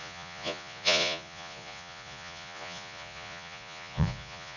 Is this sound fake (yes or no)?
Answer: yes